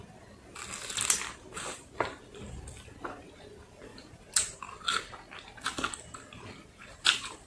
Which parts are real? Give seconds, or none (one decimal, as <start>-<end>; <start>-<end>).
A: 0.0-3.9; 4.6-6.6